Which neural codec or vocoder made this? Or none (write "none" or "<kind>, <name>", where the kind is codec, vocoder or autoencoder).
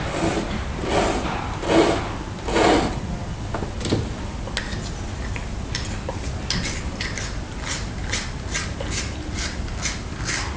none